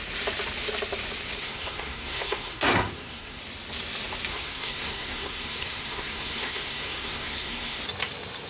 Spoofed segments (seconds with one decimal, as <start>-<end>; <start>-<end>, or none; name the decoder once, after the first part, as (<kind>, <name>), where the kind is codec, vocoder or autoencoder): 1.4-3.4 (codec, SNAC); 4.3-7.8